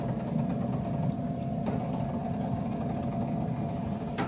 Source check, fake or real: real